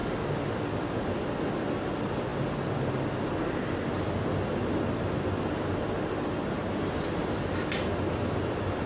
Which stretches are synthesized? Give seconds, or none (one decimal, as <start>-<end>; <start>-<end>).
none